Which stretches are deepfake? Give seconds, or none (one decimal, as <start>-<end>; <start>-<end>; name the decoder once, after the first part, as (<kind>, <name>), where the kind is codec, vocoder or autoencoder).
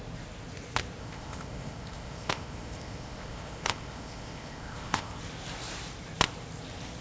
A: 1.0-5.2 (codec, ZipCodec)